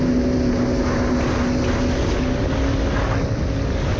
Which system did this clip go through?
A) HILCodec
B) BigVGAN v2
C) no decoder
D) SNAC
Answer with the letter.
C